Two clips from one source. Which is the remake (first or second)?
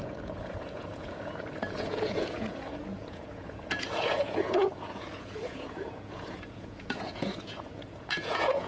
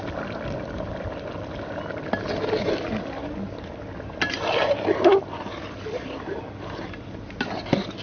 first